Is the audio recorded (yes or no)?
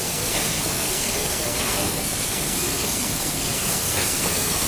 no